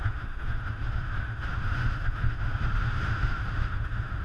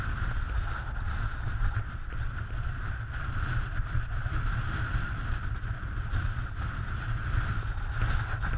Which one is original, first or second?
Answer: second